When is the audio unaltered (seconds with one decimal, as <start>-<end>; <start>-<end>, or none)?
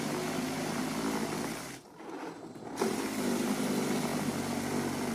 0.0-5.1